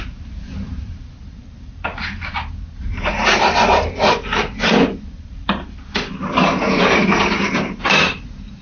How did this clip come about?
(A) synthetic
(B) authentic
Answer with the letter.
A